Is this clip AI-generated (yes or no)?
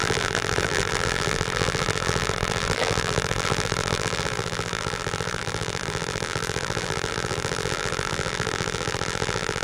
yes